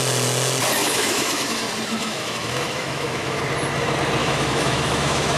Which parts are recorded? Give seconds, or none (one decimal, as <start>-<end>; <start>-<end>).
0.0-0.8; 1.6-2.0; 3.4-4.2